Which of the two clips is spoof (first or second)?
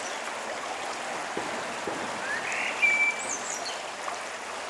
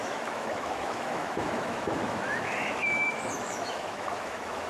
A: second